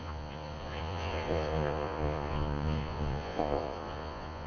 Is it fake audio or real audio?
fake